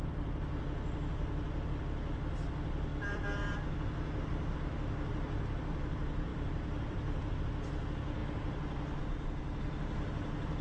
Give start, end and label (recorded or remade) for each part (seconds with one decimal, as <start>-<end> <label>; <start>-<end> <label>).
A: 0.0-2.9 recorded; 2.9-4.5 remade; 4.5-6.3 recorded; 6.3-7.4 remade; 7.4-10.6 recorded